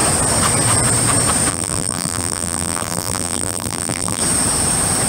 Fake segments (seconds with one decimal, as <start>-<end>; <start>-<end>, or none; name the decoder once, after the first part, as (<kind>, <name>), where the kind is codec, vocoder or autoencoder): 1.5-4.2 (vocoder, BigVGAN v2)